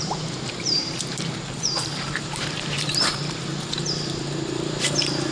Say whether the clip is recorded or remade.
remade